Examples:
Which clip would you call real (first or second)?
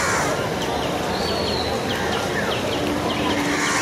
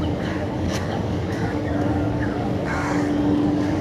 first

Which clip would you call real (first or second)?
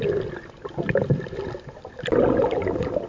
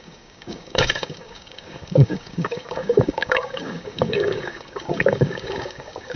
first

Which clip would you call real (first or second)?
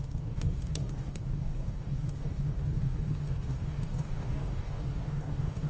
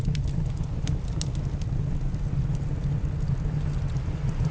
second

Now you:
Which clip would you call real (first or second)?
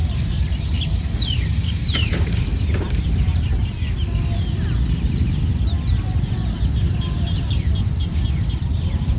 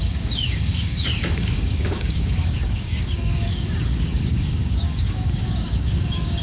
first